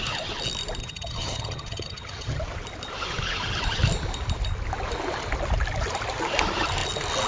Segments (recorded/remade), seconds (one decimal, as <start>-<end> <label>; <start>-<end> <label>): 0.0-0.8 recorded; 0.8-2.4 remade; 2.4-7.3 recorded